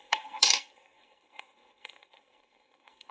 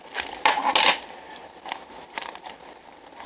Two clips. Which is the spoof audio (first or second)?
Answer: first